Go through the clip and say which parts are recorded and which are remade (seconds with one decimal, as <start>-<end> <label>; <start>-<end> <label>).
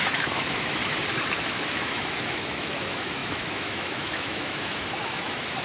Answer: 0.0-0.8 remade; 0.8-1.4 recorded; 1.4-5.6 remade